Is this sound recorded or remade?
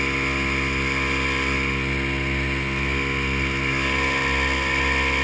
recorded